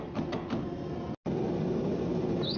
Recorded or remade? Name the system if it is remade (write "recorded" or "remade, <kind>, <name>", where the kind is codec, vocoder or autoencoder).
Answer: recorded